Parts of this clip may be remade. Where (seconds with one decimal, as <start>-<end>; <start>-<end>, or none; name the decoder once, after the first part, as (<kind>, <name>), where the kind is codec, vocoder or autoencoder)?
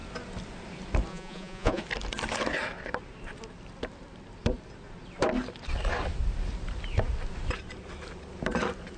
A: 1.1-1.8 (vocoder, Vocos)